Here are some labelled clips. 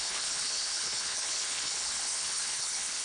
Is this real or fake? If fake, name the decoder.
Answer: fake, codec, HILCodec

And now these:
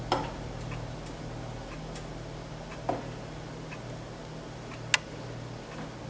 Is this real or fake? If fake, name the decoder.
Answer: real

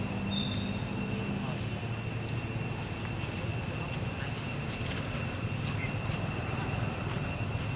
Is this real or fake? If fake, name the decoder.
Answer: real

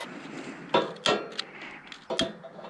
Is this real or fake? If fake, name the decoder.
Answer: real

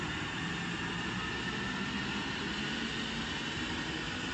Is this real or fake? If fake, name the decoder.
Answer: real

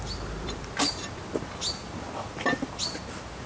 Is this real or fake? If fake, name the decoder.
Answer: real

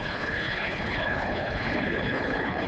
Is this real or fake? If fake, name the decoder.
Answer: fake, codec, HILCodec